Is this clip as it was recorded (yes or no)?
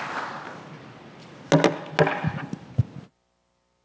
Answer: yes